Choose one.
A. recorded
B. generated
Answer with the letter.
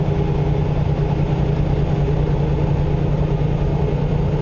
A